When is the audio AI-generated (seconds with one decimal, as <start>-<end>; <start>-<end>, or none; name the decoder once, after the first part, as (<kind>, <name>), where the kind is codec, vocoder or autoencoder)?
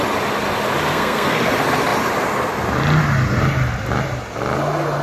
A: 0.9-1.5 (codec, SNAC)